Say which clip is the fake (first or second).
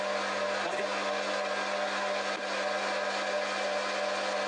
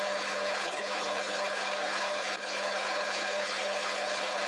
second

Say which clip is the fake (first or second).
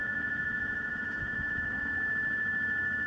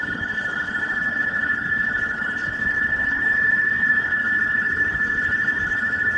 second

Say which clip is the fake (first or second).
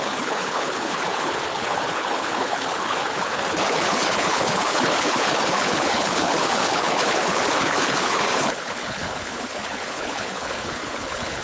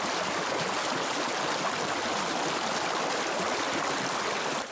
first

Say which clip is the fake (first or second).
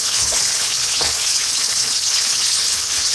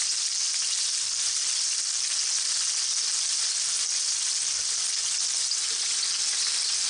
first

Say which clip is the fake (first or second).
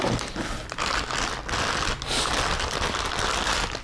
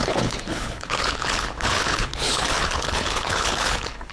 second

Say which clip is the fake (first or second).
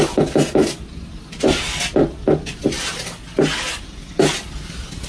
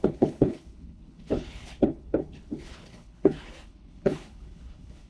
second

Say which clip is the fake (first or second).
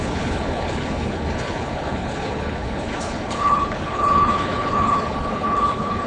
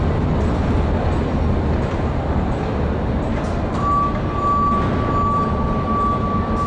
first